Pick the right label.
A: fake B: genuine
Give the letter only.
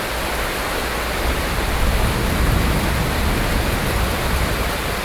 B